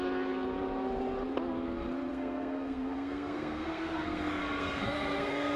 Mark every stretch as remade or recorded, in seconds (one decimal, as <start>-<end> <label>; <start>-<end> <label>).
0.0-2.1 recorded; 2.1-5.6 remade